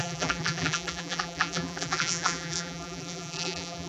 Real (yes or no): no